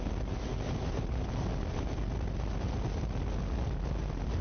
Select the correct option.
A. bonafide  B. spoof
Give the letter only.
A